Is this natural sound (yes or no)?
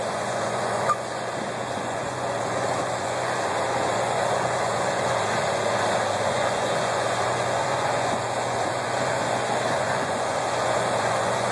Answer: no